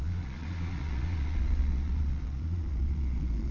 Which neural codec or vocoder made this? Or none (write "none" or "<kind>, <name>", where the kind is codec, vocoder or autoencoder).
vocoder, Vocos